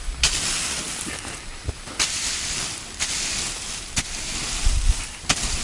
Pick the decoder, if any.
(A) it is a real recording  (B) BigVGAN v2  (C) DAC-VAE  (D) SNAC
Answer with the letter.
B